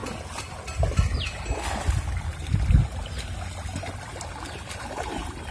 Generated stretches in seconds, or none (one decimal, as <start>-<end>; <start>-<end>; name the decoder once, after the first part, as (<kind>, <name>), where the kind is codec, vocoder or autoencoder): none